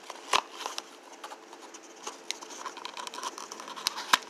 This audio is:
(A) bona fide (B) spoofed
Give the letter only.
A